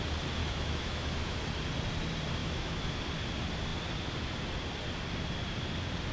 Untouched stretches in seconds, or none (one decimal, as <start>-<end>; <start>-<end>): 0.0-0.4; 1.4-2.4; 3.0-6.1